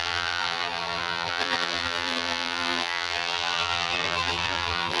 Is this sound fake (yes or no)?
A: yes